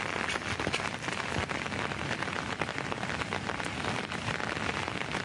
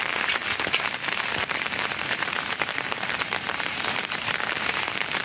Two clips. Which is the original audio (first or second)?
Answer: first